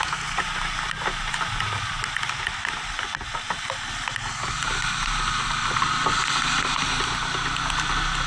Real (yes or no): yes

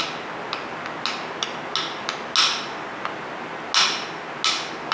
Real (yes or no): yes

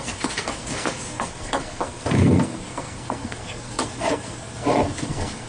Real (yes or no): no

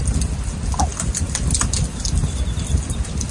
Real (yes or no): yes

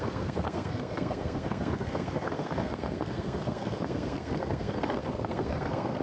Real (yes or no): no